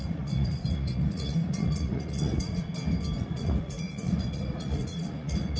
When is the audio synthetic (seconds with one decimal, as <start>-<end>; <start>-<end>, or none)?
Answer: 0.0-2.7; 3.2-5.6